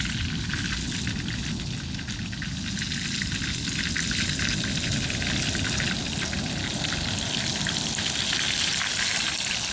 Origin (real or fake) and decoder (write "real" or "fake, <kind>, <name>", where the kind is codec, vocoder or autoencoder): real